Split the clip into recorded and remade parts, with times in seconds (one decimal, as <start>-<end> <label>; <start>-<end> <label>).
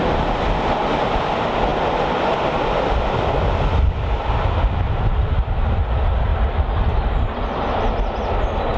0.0-8.8 recorded